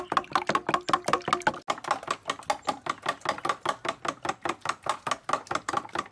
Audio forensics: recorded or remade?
recorded